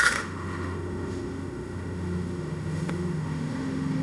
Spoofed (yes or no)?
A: yes